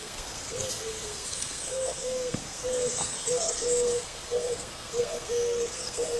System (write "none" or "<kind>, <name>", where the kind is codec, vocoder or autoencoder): codec, SNAC